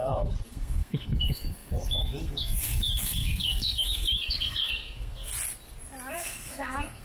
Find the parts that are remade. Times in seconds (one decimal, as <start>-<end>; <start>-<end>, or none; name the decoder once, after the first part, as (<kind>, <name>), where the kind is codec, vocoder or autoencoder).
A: 0.0-5.3 (codec, SNAC); 6.1-7.0